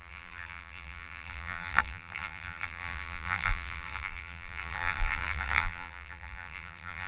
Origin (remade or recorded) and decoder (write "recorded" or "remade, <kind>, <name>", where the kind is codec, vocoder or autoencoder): remade, vocoder, BigVGAN v2